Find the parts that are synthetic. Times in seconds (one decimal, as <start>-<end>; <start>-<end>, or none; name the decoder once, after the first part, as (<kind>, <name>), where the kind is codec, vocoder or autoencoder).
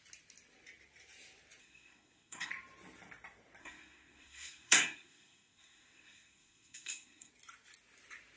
1.6-2.5 (codec, SNAC); 3.6-7.3